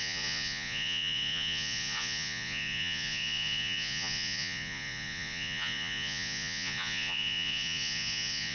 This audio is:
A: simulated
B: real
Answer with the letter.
A